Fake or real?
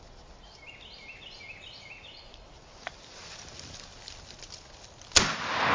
real